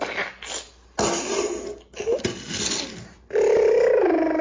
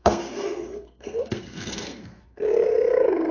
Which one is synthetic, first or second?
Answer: second